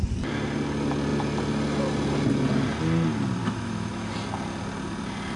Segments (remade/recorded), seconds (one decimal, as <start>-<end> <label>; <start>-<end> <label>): 0.0-3.4 recorded; 3.4-4.1 remade; 4.1-5.4 recorded